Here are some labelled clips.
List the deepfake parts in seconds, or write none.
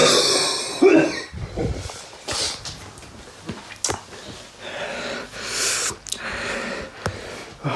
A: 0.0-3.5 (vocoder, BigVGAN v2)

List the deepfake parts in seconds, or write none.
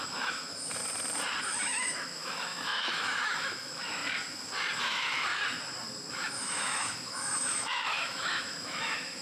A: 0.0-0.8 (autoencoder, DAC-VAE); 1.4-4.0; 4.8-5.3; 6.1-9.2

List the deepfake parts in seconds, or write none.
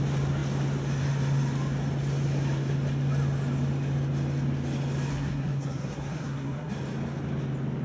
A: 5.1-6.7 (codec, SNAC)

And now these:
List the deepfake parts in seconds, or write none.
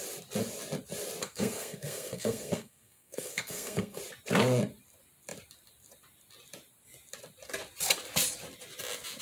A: 1.2-4.0 (codec, SNAC)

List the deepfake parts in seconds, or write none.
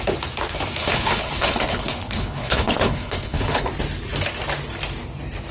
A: 0.8-3.6 (codec, HILCodec)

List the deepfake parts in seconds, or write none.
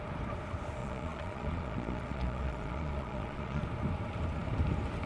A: 0.8-3.6 (vocoder, Vocos)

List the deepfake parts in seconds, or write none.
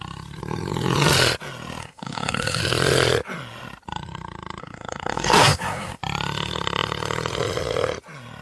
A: 1.8-2.6 (codec, SNAC); 4.6-6.0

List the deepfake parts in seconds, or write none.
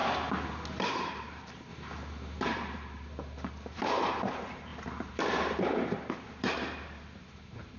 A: 0.8-1.7 (vocoder, BigVGAN v2); 2.4-7.8